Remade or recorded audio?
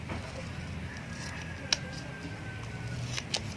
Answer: recorded